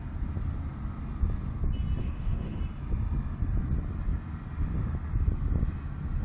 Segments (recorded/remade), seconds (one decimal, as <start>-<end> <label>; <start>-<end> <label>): 0.0-2.0 recorded; 2.0-2.6 remade; 2.6-6.2 recorded